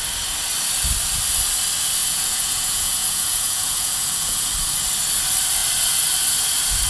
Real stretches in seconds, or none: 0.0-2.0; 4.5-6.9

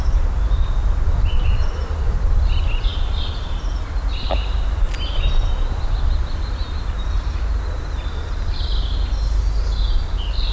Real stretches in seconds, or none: 0.0-10.5

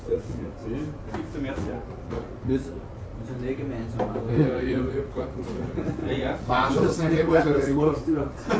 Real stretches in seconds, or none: 0.6-1.5; 3.1-4.3

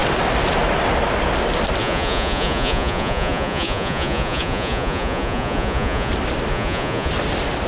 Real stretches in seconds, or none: 0.0-1.8; 6.1-6.5; 7.1-7.7

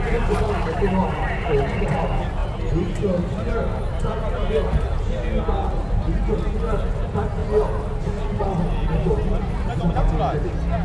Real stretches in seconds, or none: 0.0-10.8

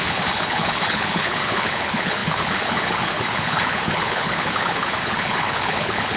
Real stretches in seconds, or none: none

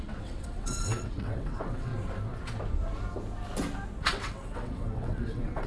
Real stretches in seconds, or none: 1.9-4.0

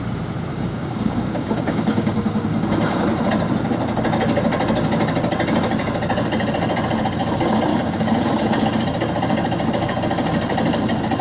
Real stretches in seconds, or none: 0.0-0.5; 3.3-7.7; 8.3-11.2